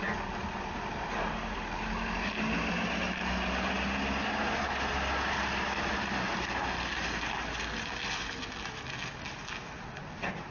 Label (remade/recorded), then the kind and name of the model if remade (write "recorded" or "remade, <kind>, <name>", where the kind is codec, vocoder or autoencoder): recorded